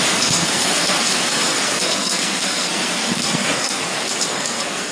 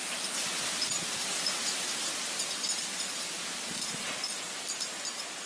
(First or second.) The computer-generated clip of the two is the first